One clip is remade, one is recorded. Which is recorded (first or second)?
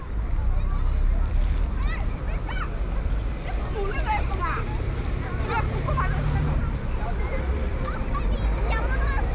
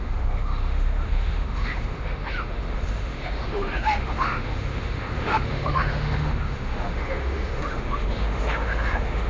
first